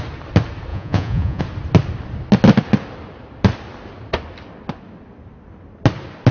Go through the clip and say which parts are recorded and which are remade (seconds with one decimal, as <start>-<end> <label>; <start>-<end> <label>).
0.0-0.7 recorded; 0.7-1.4 remade; 1.4-6.3 recorded